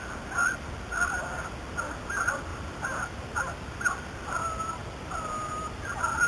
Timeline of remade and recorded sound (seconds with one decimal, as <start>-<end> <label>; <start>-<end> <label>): 0.0-6.3 recorded